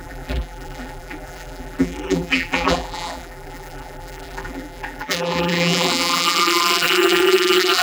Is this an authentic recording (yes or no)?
no